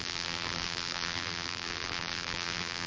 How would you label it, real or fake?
fake